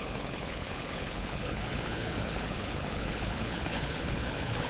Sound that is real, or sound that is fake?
fake